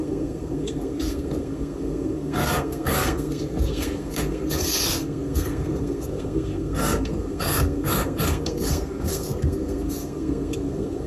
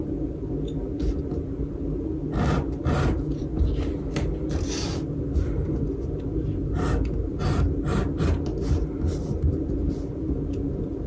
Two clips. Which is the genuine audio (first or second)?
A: second